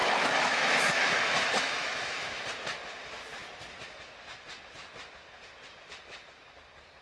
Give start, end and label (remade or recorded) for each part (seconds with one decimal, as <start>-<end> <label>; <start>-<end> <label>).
0.0-2.4 remade; 2.4-7.0 recorded